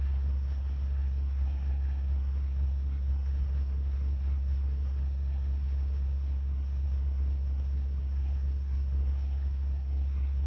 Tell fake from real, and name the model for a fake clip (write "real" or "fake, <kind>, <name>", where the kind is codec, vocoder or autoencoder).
fake, codec, SNAC